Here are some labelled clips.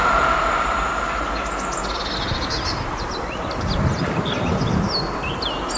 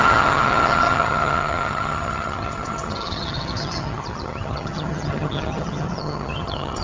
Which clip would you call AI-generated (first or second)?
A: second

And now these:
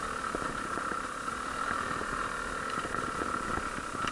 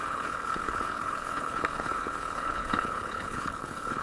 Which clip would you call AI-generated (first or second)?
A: second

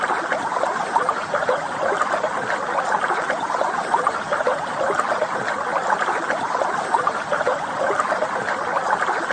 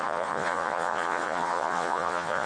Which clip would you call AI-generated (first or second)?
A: second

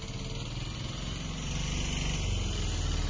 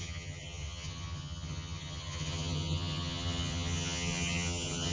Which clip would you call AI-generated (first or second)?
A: second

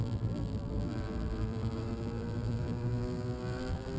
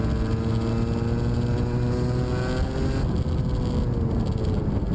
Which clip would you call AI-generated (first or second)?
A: first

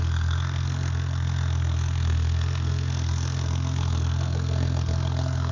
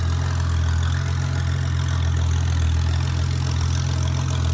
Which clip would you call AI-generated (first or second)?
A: first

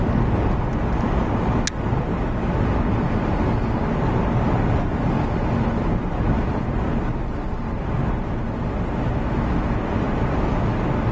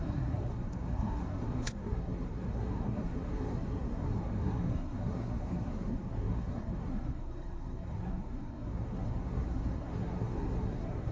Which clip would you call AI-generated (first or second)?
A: second